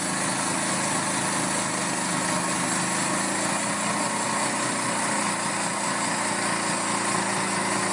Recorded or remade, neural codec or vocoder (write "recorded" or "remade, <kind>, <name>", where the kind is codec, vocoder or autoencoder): recorded